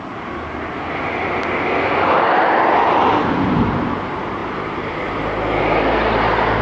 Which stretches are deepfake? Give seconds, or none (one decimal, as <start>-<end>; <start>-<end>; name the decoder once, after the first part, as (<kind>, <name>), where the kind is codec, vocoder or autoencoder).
none

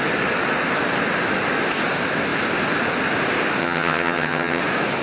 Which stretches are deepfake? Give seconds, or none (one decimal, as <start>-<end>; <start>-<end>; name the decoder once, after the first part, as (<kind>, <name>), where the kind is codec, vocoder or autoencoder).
3.6-4.6 (vocoder, HiFi-GAN)